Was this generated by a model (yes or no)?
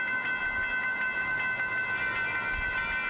no